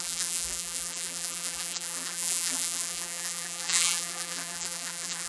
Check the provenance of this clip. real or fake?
fake